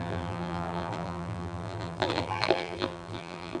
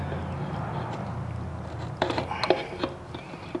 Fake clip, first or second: first